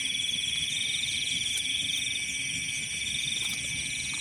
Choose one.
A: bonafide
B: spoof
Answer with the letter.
A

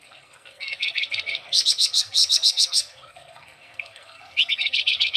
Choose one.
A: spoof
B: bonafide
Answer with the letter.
A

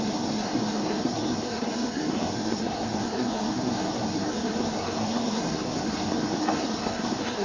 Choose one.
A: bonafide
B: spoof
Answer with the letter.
B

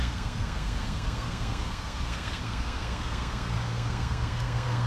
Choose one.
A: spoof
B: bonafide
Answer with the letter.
A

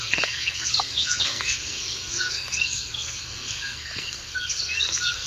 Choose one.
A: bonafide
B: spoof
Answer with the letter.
B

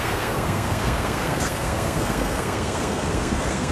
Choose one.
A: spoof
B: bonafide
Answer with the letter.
A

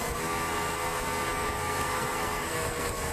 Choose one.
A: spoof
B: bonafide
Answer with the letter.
A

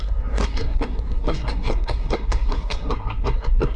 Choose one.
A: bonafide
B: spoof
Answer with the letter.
B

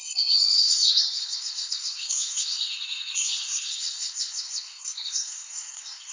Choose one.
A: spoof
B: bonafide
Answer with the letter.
A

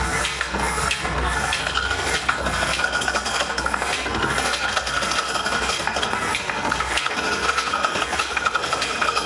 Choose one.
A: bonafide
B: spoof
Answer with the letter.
B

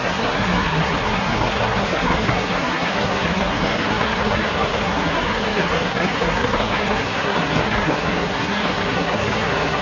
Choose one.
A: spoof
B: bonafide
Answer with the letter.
A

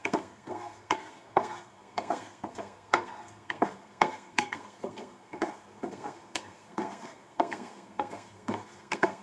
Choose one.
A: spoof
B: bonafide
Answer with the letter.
A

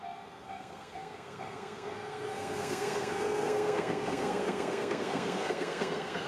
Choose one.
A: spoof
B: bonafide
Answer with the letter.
A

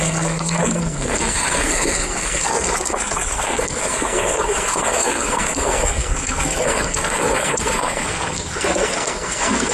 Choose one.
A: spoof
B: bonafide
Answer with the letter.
A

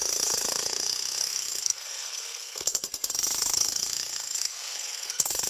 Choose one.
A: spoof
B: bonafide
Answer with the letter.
A